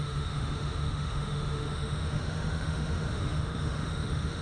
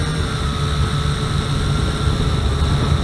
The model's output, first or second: first